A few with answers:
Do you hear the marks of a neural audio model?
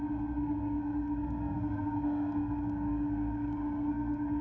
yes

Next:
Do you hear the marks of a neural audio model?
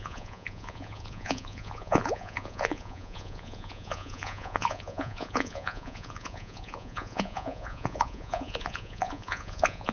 yes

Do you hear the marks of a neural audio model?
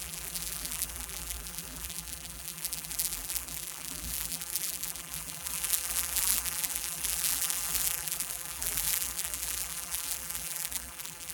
yes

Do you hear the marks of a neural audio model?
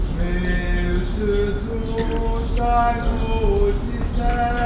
no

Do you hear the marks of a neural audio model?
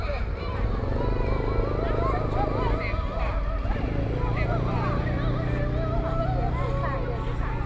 no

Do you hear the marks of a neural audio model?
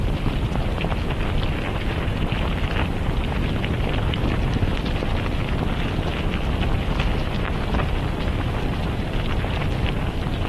yes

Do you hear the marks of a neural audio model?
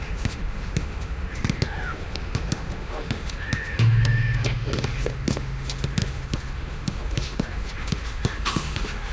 yes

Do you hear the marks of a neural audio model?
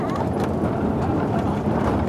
yes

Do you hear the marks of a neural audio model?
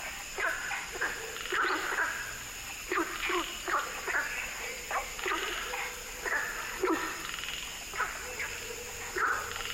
no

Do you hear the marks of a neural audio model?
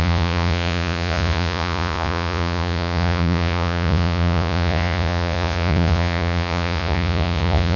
yes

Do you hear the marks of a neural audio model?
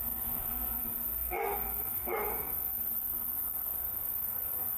yes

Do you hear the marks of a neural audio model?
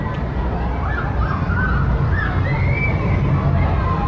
no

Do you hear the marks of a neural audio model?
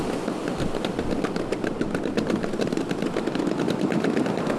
no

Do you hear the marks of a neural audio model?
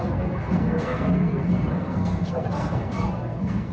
yes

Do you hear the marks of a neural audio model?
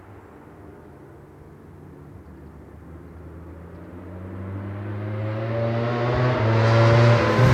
no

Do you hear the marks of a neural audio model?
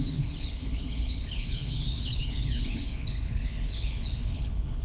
yes